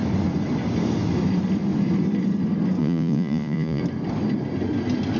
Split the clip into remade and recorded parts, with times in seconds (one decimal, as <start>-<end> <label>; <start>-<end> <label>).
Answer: 0.0-2.8 recorded; 2.8-3.8 remade; 3.8-5.2 recorded